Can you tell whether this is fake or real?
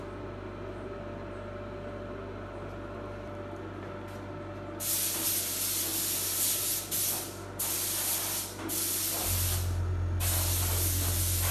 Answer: real